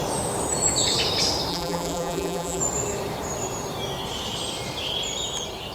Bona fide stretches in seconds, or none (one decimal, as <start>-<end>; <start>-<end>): 0.0-1.5; 2.6-5.7